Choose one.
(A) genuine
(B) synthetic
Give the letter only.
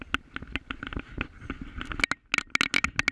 A